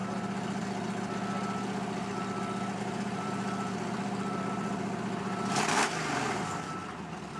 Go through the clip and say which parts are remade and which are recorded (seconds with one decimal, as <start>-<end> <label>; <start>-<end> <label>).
0.0-2.8 recorded; 2.8-7.4 remade